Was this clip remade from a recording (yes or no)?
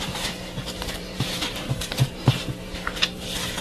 yes